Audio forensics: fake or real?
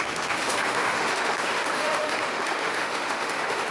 fake